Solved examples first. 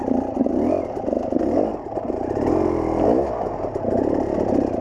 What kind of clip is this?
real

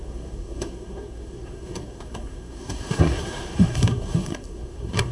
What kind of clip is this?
fake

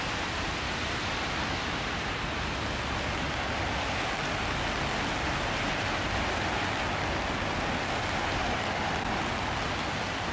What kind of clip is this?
real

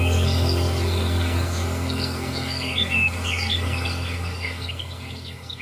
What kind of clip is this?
fake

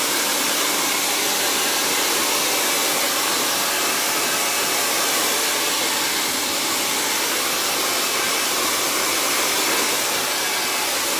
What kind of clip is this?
real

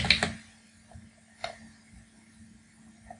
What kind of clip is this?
real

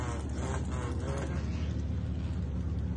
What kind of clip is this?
real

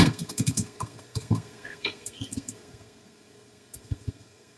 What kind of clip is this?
fake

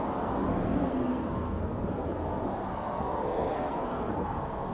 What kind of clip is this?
fake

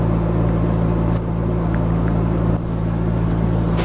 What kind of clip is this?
real